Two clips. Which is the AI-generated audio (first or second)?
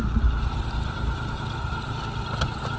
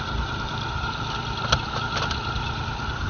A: second